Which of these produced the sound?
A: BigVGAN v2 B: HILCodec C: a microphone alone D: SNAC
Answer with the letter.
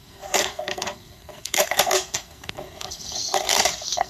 D